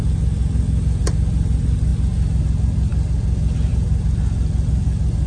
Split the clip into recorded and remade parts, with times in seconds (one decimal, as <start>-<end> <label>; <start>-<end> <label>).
0.0-5.3 recorded